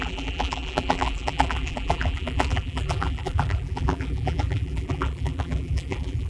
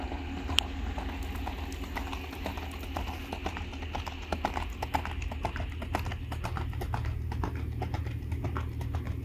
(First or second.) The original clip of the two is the second